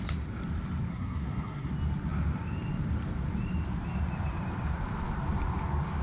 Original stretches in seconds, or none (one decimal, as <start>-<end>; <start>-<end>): 0.0-0.9; 1.7-6.0